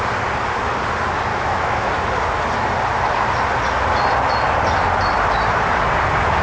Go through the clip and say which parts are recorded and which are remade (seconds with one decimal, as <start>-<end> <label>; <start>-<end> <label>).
0.0-1.3 recorded; 1.3-1.9 remade; 1.9-6.4 recorded